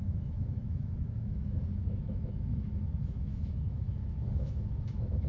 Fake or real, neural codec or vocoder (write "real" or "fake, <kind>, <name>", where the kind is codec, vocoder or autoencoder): fake, autoencoder, DAC-VAE